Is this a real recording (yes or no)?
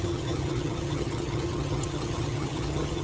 no